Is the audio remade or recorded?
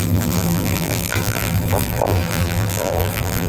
remade